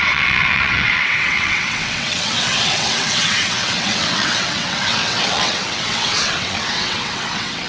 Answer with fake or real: fake